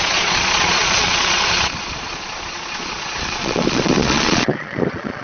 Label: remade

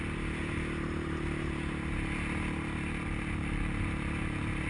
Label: recorded